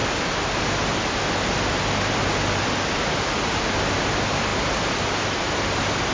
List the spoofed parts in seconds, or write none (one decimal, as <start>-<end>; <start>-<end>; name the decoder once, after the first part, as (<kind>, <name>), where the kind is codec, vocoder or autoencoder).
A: none